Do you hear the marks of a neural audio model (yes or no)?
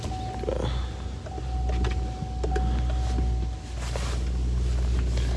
no